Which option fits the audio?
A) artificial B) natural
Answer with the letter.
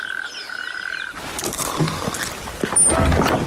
B